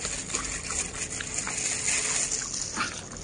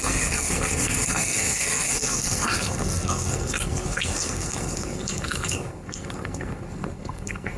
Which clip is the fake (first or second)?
second